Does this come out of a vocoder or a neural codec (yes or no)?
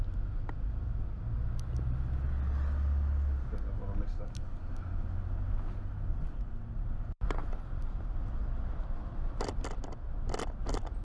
no